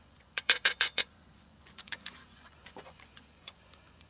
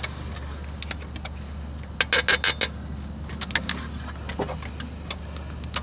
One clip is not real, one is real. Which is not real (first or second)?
first